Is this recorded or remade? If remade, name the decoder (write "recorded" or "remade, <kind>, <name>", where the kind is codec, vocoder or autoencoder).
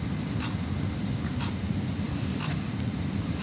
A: remade, vocoder, BigVGAN v2